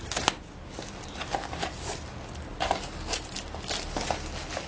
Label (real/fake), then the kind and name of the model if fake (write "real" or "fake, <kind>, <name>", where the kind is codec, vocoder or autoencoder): real